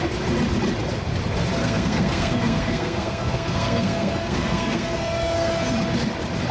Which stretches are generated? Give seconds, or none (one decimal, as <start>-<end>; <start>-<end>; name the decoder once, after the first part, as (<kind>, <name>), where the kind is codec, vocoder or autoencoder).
1.6-5.5 (codec, SNAC)